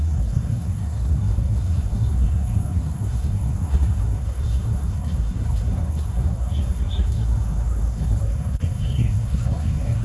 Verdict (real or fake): fake